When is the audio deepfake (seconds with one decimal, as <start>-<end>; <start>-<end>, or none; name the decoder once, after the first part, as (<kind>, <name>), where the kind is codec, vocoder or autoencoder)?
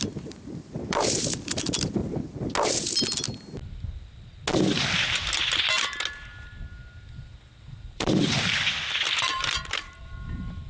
0.0-2.0 (vocoder, BigVGAN v2); 7.1-10.7